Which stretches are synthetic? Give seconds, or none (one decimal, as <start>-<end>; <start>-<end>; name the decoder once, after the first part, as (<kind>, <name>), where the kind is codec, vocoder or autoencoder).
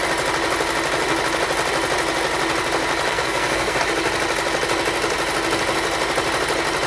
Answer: 3.1-3.8 (codec, SNAC)